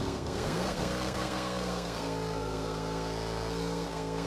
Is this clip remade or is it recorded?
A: remade